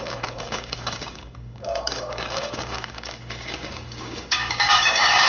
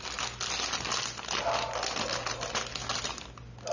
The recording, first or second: second